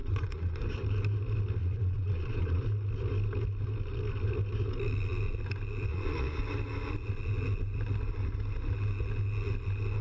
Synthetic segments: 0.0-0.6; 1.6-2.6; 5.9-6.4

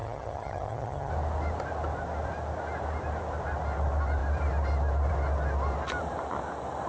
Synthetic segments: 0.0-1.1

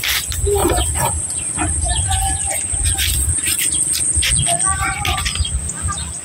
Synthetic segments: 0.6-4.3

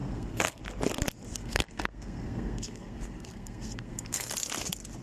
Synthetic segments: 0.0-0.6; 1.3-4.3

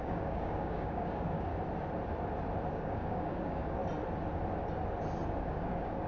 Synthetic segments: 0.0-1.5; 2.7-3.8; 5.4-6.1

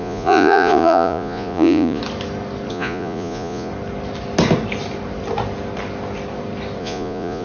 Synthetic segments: 0.0-2.0; 2.7-3.7; 6.8-7.4

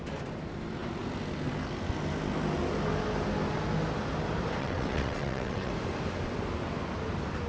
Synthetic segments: 4.6-5.7